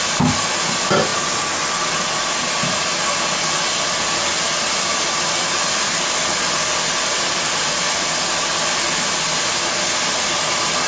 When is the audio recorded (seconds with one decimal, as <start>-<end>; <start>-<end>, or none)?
0.0-10.9